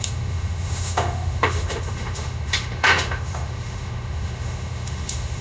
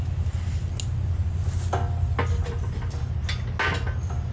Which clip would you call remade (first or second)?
first